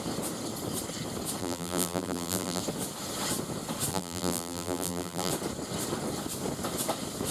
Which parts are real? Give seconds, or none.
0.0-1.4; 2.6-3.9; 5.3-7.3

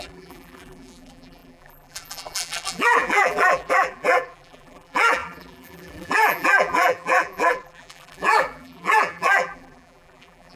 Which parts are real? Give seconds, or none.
none